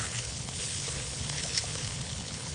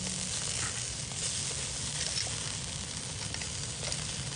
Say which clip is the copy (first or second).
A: first